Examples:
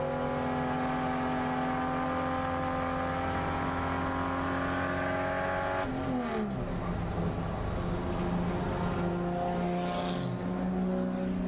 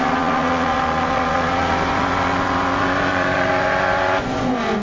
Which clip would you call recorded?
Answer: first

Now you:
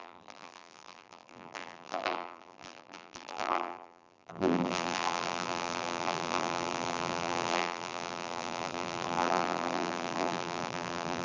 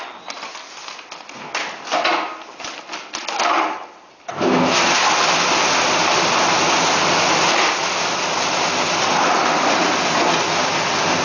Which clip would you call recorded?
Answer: second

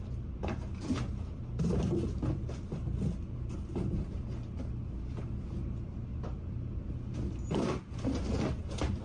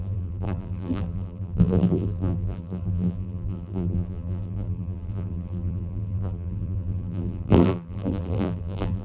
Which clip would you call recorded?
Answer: first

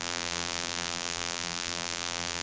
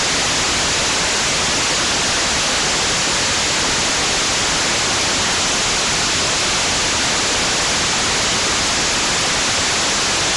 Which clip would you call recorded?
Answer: second